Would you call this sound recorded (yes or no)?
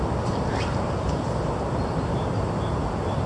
yes